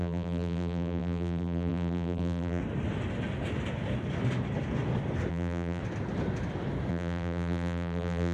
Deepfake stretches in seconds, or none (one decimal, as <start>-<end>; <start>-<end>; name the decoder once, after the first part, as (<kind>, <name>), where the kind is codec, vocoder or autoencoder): 0.0-2.6 (vocoder, BigVGAN v2); 5.3-5.8; 6.9-8.3